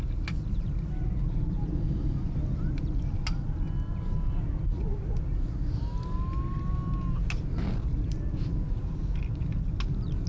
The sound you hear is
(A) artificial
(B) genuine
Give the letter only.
B